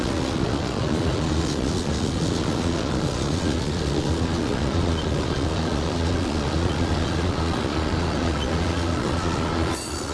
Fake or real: fake